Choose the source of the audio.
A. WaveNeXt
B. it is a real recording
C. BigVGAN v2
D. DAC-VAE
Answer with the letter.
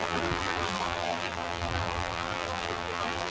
C